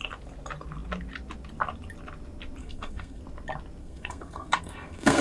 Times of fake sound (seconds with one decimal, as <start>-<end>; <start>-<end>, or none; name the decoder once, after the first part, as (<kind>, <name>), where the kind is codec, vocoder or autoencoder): 2.6-3.2 (codec, SNAC); 3.8-5.2